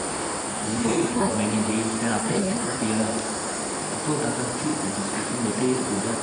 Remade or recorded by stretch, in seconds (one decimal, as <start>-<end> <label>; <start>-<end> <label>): 0.0-0.5 recorded; 0.5-1.3 remade; 1.3-2.2 recorded; 2.2-2.8 remade; 2.8-6.2 recorded